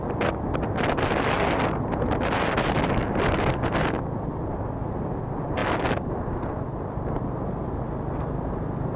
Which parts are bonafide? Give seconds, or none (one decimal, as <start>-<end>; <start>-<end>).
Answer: 0.0-9.0